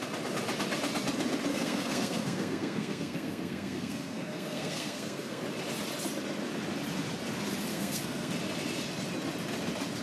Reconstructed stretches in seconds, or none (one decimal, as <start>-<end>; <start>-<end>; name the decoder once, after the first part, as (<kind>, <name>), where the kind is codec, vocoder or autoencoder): 1.5-5.4 (codec, SNAC); 7.7-8.3

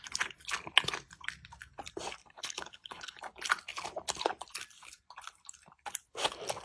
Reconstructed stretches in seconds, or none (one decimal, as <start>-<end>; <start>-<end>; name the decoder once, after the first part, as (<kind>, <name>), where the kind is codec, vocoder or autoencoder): 2.2-3.2 (codec, HILCodec)

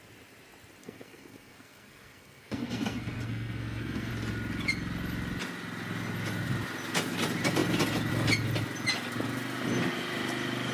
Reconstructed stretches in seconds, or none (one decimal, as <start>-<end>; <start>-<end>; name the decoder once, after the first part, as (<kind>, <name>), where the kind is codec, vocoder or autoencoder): 0.8-4.1 (codec, SNAC)